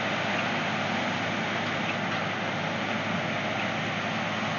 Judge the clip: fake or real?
real